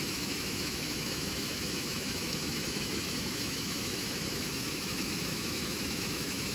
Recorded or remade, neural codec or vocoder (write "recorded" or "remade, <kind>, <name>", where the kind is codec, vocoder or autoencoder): remade, autoencoder, DAC-VAE